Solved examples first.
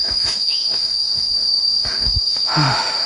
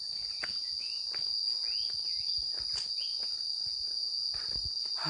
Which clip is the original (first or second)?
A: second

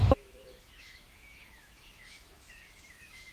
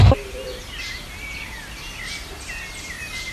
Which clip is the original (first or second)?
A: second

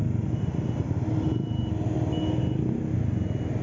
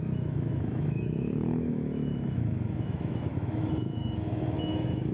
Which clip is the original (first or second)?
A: first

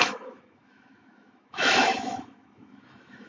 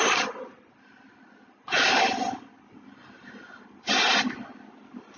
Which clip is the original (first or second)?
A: second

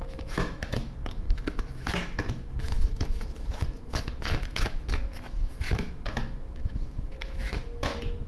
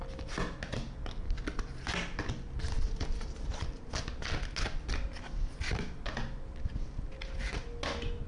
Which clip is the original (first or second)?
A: second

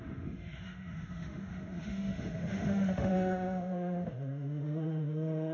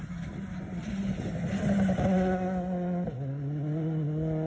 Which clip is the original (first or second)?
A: second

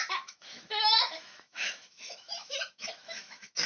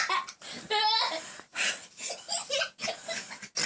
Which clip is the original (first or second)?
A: second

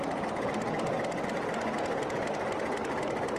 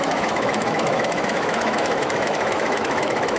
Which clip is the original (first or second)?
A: first